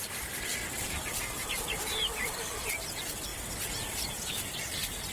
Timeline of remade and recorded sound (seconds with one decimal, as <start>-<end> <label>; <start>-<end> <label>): 0.0-3.3 remade; 3.3-3.8 recorded; 3.8-5.1 remade